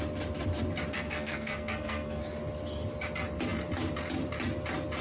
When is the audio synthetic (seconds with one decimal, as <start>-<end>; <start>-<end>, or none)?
0.9-2.2